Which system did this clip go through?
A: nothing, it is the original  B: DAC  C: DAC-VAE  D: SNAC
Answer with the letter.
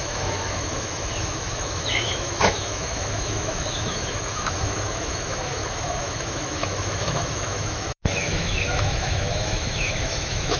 C